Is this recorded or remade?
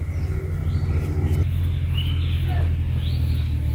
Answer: recorded